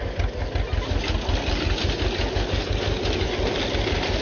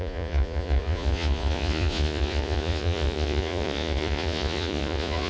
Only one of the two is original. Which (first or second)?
first